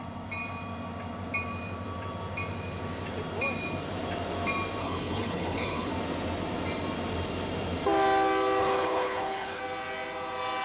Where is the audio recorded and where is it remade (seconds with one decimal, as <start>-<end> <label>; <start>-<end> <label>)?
0.0-4.8 recorded; 4.8-5.9 remade; 5.9-8.6 recorded; 8.6-9.6 remade; 9.6-10.6 recorded